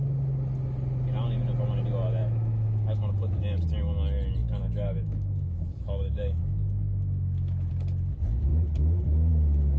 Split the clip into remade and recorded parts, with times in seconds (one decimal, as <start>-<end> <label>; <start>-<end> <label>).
0.0-2.2 recorded; 2.2-3.1 remade; 3.1-4.4 recorded; 4.4-7.7 remade; 7.7-9.8 recorded